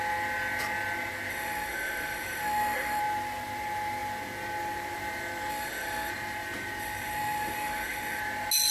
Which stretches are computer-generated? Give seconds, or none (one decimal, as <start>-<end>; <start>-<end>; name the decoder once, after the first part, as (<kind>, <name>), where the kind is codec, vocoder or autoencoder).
1.3-3.0 (autoencoder, DAC-VAE); 5.5-6.1; 6.8-8.2